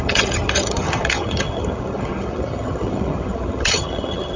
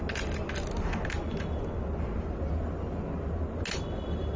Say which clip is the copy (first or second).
first